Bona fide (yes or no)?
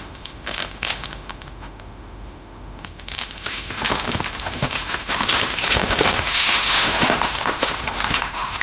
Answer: no